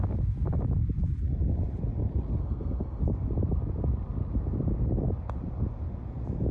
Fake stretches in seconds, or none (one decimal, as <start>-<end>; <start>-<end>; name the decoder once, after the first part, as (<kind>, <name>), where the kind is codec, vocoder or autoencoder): 2.4-3.0 (codec, SNAC)